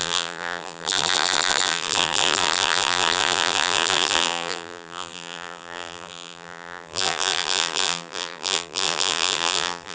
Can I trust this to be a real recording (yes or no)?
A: no